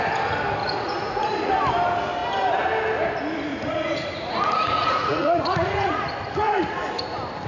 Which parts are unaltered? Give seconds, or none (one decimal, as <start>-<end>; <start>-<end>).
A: 0.0-0.6; 1.5-3.5; 6.0-7.5